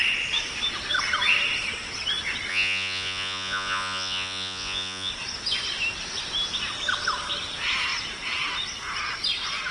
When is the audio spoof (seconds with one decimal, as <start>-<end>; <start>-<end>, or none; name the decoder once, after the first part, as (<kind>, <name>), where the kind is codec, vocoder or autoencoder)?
2.5-5.1 (vocoder, Vocos)